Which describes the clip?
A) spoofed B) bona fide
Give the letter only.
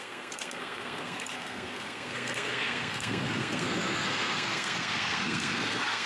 A